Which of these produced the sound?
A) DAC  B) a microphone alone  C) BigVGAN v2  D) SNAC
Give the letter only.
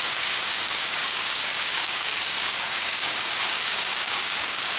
A